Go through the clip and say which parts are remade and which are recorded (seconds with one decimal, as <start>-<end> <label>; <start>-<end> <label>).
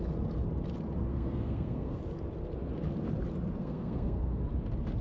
0.0-1.1 recorded; 1.1-2.0 remade; 2.0-3.6 recorded; 3.6-4.4 remade; 4.4-5.0 recorded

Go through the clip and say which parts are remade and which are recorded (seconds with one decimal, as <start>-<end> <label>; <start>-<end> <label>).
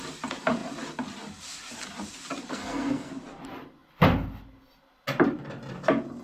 0.0-2.5 recorded; 2.5-3.1 remade; 3.1-6.2 recorded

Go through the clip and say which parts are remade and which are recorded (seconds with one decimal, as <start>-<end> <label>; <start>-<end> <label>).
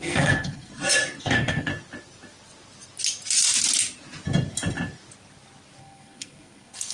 0.0-0.7 remade; 0.7-1.2 recorded; 1.2-1.7 remade; 1.7-5.8 recorded; 5.8-6.9 remade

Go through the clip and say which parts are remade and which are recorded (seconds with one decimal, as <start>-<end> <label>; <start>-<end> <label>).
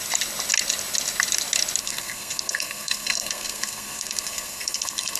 0.0-1.8 recorded; 1.8-5.2 remade